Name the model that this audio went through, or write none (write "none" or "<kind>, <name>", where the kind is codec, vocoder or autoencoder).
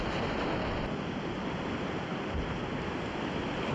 none